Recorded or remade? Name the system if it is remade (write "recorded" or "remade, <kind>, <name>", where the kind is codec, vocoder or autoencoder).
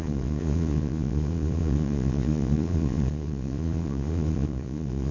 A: remade, vocoder, Vocos